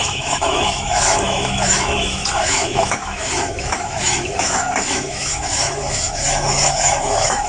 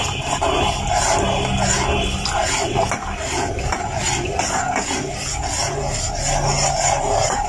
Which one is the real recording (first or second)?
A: second